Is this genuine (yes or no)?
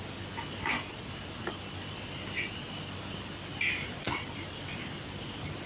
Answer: yes